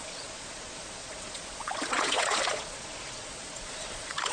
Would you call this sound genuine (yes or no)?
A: no